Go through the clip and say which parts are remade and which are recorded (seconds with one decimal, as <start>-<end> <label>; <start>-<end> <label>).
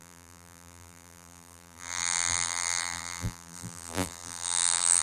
0.0-5.0 remade